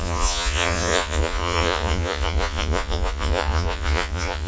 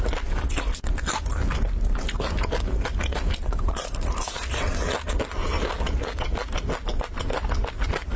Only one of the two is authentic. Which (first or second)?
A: second